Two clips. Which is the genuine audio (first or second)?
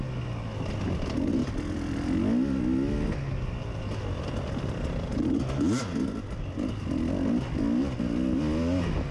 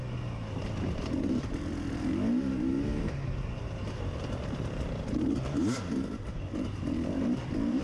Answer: first